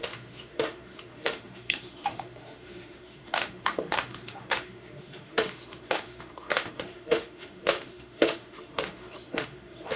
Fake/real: fake